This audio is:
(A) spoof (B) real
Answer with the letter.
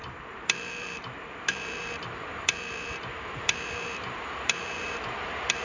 A